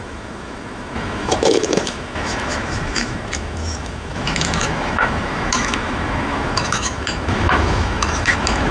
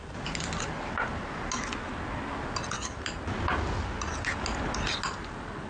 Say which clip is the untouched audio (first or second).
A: second